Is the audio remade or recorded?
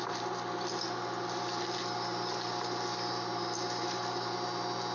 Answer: recorded